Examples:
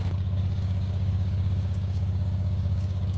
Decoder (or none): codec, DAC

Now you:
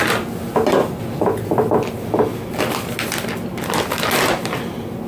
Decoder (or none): none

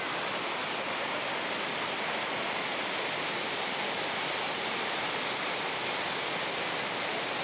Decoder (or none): none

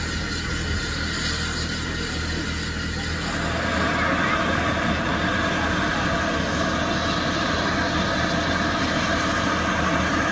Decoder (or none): none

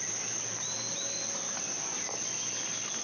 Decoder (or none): none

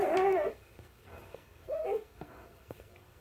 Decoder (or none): codec, SNAC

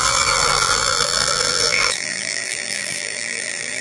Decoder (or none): vocoder, BigVGAN v2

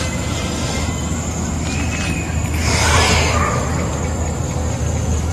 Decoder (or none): none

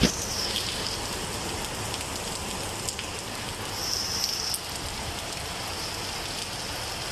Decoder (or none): none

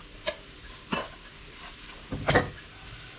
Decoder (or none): none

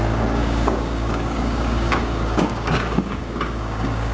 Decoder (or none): codec, DAC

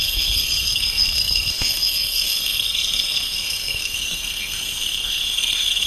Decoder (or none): codec, SNAC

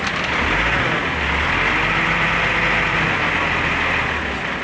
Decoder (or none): none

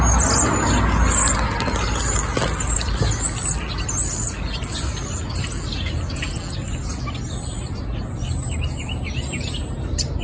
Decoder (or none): none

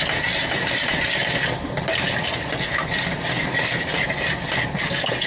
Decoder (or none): none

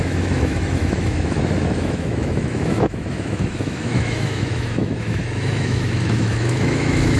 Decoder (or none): autoencoder, DAC-VAE